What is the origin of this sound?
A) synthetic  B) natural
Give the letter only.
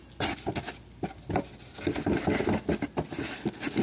B